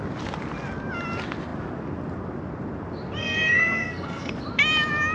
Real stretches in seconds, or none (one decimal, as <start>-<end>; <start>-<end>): 0.0-3.2; 4.3-5.1